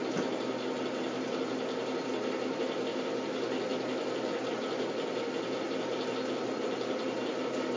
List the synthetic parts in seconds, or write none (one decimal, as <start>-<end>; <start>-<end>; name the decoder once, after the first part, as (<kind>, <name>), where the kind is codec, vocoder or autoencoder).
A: none